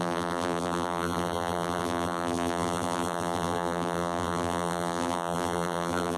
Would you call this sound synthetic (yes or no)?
yes